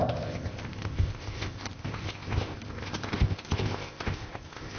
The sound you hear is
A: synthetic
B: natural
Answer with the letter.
A